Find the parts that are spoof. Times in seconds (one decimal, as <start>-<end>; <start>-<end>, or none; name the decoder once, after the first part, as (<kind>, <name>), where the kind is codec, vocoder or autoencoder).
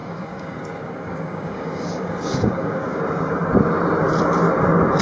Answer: 0.0-3.0 (codec, DAC)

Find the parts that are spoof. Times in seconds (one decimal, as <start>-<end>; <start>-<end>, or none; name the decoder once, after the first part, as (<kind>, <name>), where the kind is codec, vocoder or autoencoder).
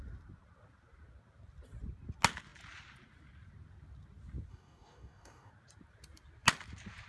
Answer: 4.5-5.5 (codec, DAC)